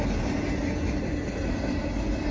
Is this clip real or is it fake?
real